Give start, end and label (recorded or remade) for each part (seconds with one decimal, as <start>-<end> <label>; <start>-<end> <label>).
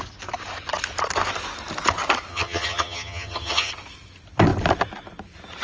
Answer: 0.0-2.3 recorded; 2.3-3.7 remade; 3.7-5.6 recorded